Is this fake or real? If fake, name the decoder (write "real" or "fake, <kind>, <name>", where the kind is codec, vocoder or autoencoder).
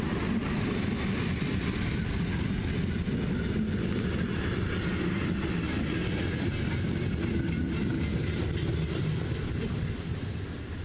real